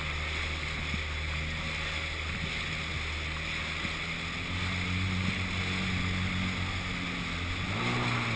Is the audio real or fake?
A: real